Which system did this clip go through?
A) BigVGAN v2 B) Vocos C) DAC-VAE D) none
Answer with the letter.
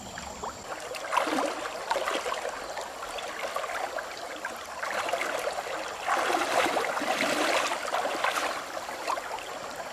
D